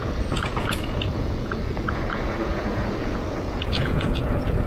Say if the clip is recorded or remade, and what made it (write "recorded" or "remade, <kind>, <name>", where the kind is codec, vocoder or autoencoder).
remade, vocoder, Vocos